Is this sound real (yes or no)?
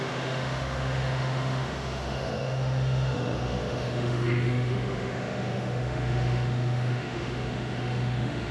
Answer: no